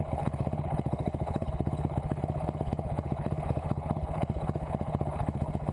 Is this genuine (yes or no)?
no